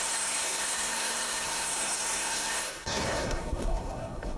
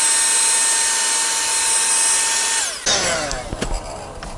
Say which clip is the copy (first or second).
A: first